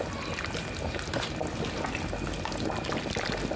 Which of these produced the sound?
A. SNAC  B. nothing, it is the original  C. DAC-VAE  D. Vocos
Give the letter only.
B